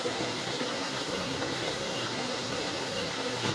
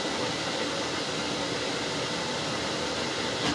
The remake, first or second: first